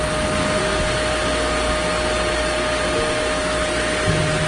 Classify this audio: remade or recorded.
recorded